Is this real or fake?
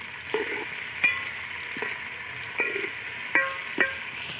real